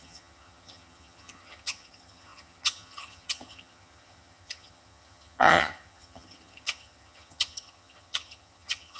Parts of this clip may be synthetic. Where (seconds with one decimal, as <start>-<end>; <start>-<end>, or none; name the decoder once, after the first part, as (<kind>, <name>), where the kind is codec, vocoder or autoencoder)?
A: 0.0-9.0 (vocoder, HiFi-GAN)